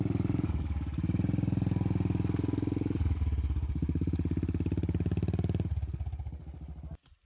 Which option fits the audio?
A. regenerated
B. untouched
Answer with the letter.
B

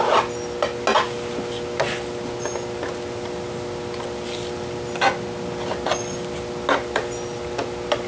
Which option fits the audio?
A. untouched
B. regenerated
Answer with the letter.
A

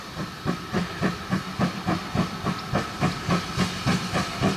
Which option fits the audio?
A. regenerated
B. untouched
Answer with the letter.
B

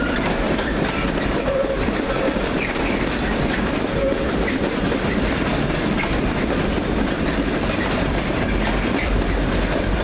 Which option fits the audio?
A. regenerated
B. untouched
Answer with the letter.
A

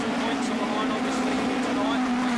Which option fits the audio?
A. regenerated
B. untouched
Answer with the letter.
B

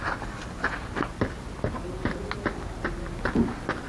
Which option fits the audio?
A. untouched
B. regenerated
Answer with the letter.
A